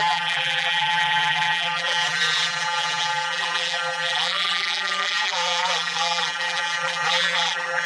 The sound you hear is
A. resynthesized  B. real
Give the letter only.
A